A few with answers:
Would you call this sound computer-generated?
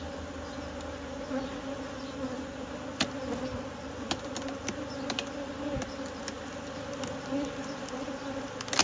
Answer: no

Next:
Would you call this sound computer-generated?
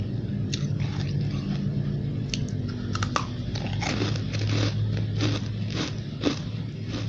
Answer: no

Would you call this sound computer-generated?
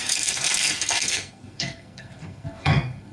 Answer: yes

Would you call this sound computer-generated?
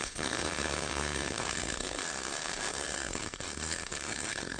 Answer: yes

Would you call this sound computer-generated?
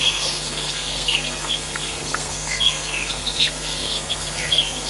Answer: yes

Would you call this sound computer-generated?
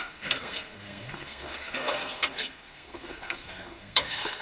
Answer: yes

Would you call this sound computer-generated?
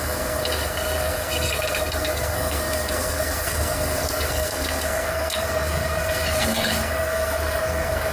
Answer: yes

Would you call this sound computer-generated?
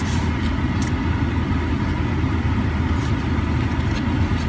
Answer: no